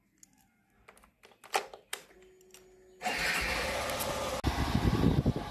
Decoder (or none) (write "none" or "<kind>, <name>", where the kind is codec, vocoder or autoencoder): none